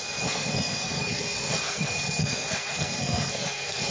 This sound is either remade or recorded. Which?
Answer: remade